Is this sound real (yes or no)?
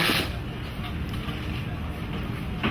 yes